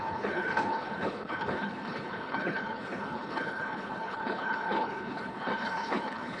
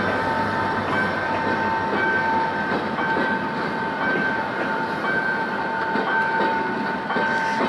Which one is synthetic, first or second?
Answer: first